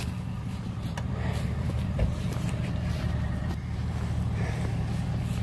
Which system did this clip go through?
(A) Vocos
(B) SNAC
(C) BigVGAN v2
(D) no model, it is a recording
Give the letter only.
C